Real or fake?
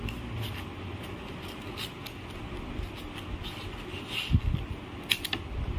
real